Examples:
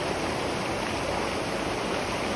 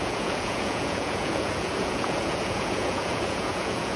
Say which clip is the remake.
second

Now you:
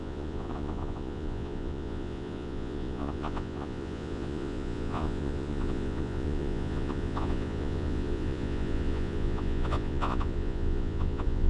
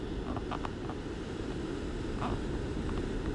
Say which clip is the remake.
first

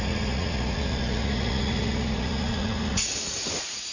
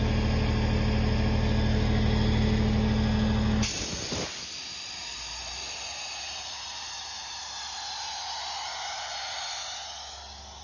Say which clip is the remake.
first